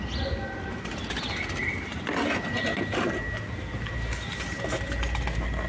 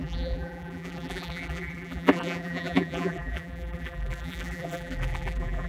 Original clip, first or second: first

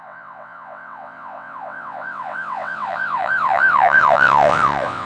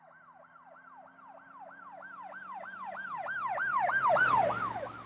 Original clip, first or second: second